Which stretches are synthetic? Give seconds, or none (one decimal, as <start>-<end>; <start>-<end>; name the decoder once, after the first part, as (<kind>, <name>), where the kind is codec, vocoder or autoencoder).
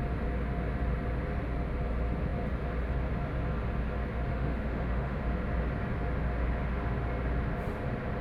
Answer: 4.3-5.2 (autoencoder, DAC-VAE)